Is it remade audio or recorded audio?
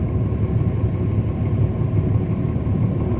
remade